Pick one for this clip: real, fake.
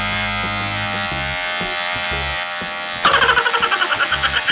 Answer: real